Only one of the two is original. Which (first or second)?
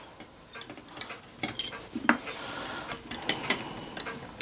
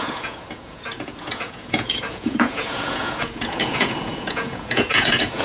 first